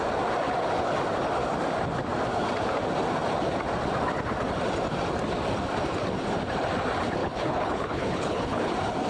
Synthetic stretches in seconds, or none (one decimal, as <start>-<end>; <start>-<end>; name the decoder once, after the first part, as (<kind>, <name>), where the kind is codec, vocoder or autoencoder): 7.2-8.7 (codec, HILCodec)